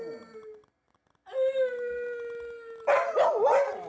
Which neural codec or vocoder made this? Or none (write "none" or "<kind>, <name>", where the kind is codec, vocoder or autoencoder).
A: none